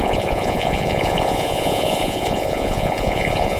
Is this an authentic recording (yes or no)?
no